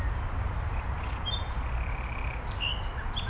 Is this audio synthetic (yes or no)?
no